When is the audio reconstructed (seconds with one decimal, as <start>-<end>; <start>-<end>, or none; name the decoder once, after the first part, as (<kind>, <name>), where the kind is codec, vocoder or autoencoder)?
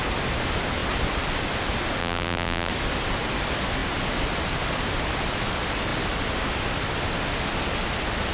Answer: 2.0-2.7 (vocoder, BigVGAN v2)